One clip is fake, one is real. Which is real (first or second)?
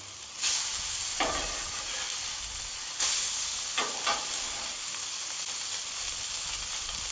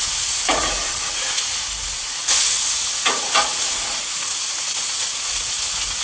first